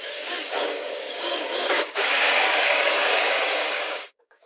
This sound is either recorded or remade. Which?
remade